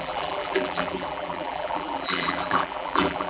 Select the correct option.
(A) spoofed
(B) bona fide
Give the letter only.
A